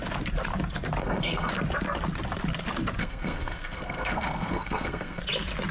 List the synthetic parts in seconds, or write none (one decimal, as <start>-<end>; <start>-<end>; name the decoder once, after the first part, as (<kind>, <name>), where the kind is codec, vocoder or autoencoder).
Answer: 1.0-1.5 (codec, SNAC); 3.0-5.2